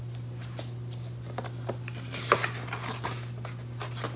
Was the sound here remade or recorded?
recorded